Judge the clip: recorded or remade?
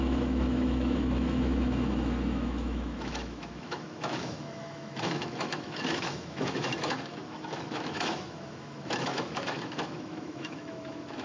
remade